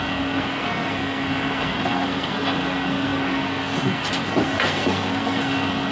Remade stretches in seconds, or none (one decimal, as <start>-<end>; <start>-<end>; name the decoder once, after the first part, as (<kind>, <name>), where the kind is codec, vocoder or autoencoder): 0.0-5.9 (codec, SNAC)

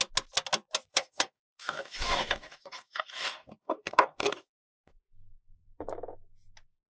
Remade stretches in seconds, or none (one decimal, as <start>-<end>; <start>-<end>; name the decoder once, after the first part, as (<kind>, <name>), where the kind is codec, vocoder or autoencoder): 0.9-5.0 (codec, DAC)

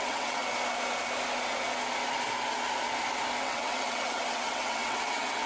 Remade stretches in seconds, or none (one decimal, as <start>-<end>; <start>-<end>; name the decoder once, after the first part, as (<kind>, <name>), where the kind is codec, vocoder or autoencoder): 0.0-0.4 (vocoder, WaveNeXt); 3.4-5.5

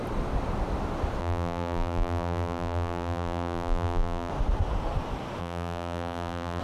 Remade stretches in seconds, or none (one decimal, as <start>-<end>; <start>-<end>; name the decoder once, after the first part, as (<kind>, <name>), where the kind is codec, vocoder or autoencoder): 1.2-4.3 (vocoder, BigVGAN v2); 5.4-6.6

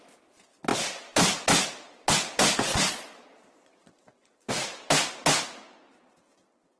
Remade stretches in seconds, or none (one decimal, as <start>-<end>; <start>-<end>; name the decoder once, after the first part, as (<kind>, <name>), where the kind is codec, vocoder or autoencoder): 2.7-4.5 (vocoder, Vocos)

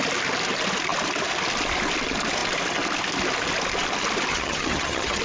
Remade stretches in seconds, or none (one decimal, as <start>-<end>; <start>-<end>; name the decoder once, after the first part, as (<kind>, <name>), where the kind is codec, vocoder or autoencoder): 4.3-5.2 (vocoder, HiFi-GAN)